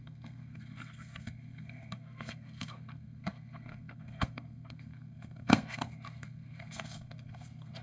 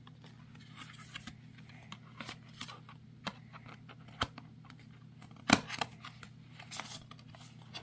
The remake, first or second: first